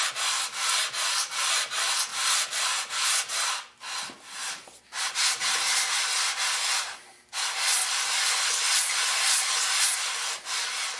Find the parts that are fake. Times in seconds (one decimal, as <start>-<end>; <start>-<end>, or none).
none